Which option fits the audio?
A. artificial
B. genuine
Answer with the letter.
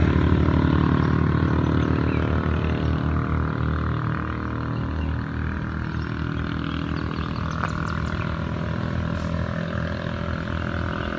B